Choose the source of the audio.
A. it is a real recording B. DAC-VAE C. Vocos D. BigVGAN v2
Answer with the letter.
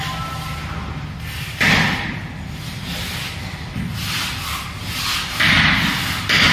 A